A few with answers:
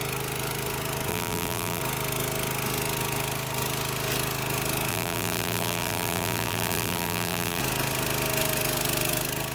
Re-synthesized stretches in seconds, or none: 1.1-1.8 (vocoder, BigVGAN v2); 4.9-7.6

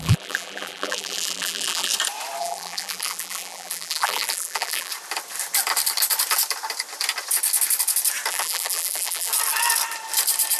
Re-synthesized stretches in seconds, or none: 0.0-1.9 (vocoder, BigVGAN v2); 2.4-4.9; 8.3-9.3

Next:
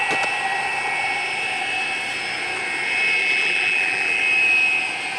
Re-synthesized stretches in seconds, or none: 3.2-4.2 (vocoder, BigVGAN v2)